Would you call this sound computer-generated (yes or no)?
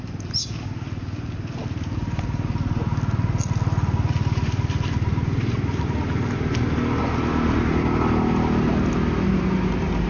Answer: no